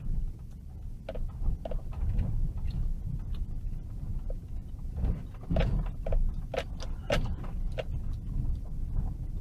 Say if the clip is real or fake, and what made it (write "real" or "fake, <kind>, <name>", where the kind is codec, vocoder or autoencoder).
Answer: real